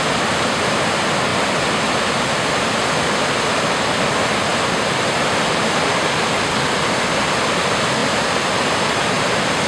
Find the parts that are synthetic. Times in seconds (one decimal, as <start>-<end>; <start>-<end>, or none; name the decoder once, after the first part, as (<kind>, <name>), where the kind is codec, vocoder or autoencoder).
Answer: 4.5-5.5 (vocoder, BigVGAN v2); 8.0-9.1